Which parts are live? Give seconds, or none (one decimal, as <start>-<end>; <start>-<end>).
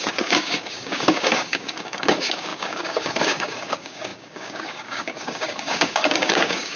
none